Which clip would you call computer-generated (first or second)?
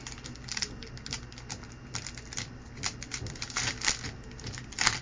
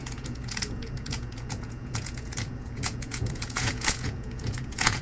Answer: second